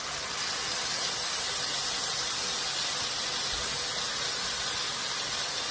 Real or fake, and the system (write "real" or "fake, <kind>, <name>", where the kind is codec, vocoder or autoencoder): real